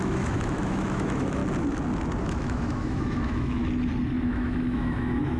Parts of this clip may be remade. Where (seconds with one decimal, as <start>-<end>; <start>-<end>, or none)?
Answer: 0.0-1.4; 2.2-3.6; 4.2-5.4